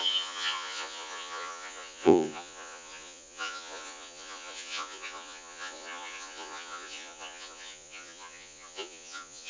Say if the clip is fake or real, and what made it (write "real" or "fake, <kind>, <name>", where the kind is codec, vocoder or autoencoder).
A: fake, vocoder, Vocos